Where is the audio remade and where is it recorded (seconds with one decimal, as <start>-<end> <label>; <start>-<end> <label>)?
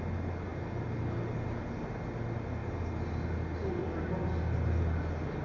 0.0-5.4 recorded